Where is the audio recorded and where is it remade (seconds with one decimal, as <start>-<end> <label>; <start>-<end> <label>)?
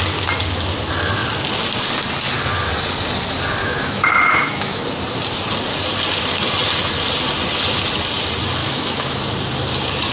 0.0-3.6 recorded; 3.6-4.8 remade; 4.8-8.6 recorded; 8.6-9.2 remade; 9.2-10.1 recorded